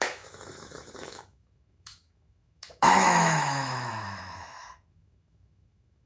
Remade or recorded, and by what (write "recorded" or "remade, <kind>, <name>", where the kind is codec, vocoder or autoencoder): remade, autoencoder, DAC-VAE